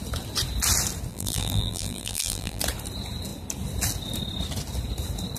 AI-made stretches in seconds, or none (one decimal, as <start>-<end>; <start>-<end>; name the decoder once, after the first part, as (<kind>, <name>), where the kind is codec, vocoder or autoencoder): 1.1-2.6 (vocoder, BigVGAN v2)

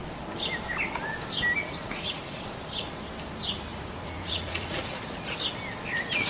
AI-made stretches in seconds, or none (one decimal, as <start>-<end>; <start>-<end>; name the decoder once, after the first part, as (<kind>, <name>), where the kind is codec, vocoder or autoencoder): 1.8-2.4 (vocoder, Vocos); 3.7-5.0

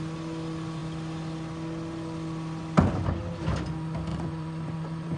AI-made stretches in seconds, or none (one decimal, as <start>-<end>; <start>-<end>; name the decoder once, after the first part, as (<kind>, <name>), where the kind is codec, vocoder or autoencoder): 4.1-5.2 (vocoder, Vocos)

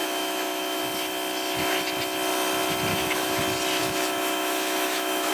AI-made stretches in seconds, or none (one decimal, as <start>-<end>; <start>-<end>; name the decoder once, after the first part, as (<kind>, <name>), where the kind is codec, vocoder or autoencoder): 0.0-0.8 (autoencoder, DAC-VAE); 2.9-3.4; 3.8-5.3

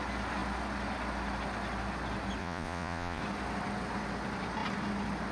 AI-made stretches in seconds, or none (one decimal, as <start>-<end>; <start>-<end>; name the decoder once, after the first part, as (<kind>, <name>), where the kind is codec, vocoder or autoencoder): 2.4-3.2 (vocoder, Vocos)